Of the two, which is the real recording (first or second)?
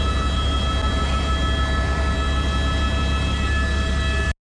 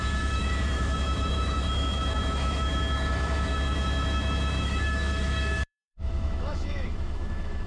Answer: first